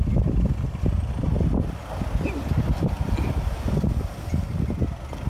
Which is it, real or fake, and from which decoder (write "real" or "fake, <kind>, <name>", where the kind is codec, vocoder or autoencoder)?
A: real